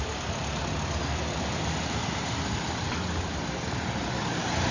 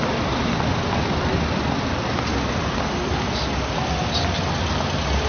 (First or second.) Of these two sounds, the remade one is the first